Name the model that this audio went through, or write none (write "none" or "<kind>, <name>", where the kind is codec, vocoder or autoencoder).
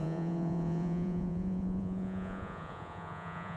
vocoder, Vocos